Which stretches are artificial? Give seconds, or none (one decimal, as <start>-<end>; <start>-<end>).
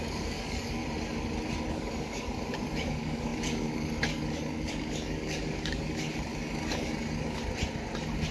0.0-0.8; 1.7-7.4